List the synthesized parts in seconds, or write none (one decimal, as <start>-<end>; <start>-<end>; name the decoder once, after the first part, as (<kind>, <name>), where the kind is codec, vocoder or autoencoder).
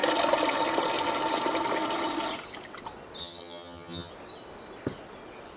3.2-4.1 (vocoder, HiFi-GAN)